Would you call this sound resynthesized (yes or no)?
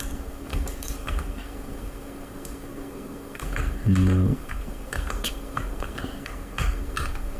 yes